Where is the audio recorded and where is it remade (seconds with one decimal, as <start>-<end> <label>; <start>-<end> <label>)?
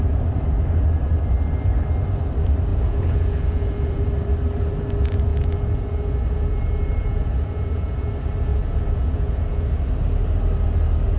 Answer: 0.0-2.7 recorded; 2.7-4.1 remade; 4.1-5.3 recorded; 5.3-8.1 remade; 8.1-8.5 recorded; 8.5-9.7 remade; 9.7-11.2 recorded